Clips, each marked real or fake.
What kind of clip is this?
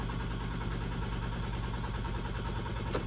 real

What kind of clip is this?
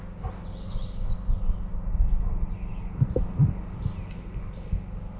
real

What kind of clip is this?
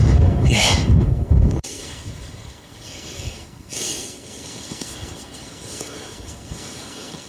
fake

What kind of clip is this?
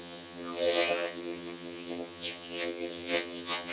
fake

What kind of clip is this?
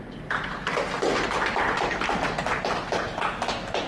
real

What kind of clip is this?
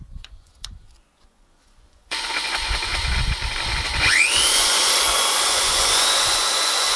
fake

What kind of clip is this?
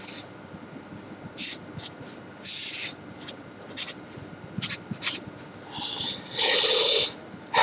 real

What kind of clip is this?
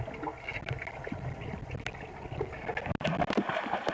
real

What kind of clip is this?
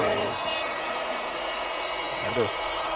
fake